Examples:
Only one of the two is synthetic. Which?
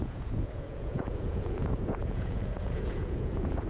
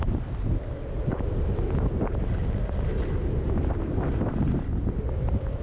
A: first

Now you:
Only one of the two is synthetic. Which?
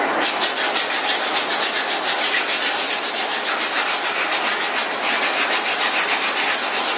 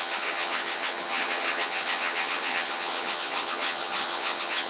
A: second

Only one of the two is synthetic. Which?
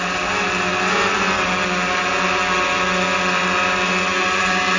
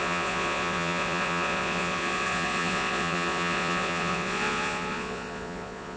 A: second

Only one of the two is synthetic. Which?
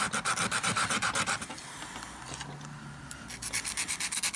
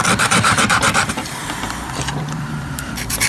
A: second